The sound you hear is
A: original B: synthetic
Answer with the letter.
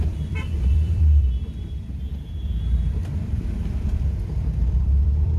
B